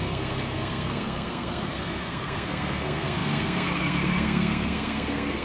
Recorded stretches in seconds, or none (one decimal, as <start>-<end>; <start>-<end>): none